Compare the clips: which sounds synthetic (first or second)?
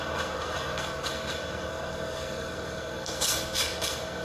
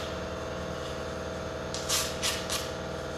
first